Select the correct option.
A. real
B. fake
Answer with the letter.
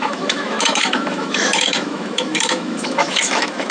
B